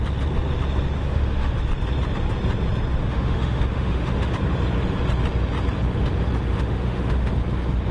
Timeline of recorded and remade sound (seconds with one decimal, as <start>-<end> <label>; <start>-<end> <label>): 0.0-1.0 recorded; 1.0-1.6 remade; 1.6-3.0 recorded; 3.0-4.3 remade; 4.3-6.5 recorded; 6.5-7.3 remade; 7.3-7.9 recorded